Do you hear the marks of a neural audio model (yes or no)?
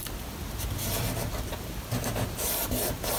no